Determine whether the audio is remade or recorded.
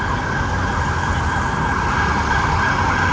recorded